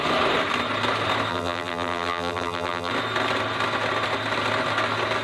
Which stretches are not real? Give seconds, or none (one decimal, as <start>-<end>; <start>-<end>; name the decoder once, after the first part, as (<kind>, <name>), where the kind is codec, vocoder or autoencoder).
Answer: 1.3-2.9 (vocoder, BigVGAN v2)

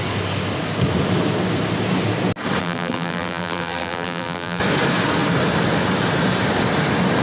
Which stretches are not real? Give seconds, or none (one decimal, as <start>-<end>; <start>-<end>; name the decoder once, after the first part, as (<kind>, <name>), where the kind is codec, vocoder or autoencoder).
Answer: 2.6-4.6 (vocoder, BigVGAN v2)

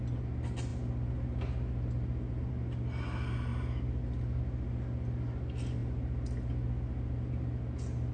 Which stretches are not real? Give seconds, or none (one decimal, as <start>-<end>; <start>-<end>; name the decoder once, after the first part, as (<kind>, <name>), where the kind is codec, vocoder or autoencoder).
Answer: none